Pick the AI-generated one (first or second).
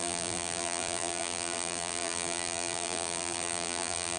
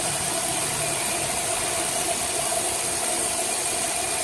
first